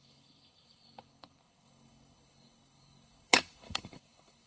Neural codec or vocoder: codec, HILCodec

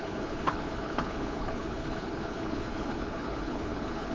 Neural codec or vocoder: codec, HILCodec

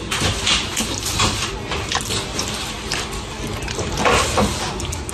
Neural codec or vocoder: none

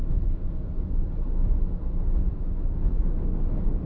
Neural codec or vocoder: none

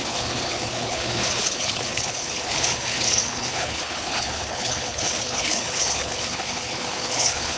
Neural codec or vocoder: codec, HILCodec